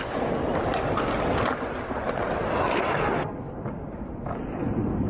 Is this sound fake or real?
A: real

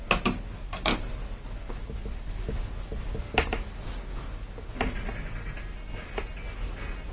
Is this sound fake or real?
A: real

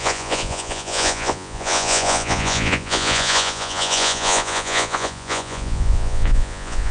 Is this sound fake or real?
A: fake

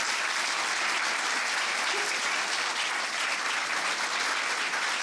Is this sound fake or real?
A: real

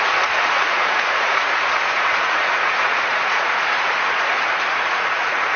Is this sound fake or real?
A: fake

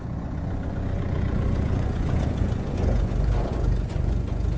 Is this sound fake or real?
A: fake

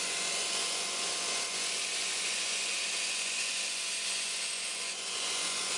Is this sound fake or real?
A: fake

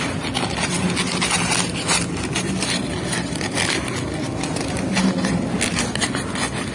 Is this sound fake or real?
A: real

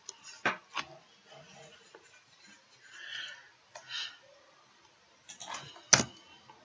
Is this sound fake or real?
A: real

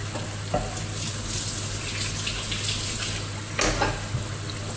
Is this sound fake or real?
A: real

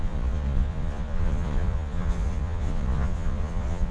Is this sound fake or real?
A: fake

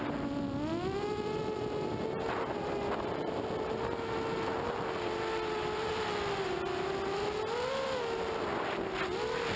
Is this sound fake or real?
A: real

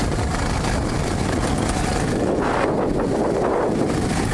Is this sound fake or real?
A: real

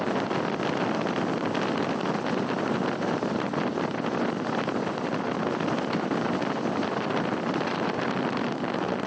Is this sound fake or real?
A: real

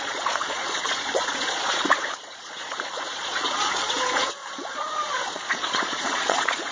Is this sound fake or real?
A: fake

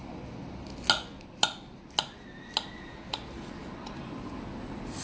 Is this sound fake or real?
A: real